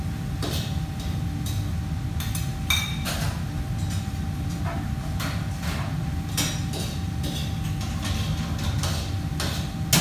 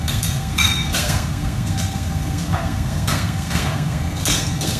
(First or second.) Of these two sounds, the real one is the first